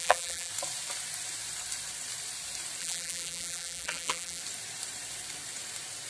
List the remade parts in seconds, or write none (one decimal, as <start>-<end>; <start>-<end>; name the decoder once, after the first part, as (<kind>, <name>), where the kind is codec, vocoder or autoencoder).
0.0-0.5 (vocoder, BigVGAN v2); 2.8-4.4